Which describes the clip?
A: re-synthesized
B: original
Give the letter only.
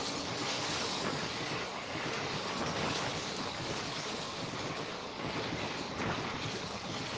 A